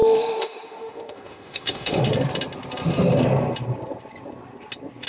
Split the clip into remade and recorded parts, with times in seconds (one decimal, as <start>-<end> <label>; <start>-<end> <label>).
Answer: 0.0-2.1 remade; 2.1-5.1 recorded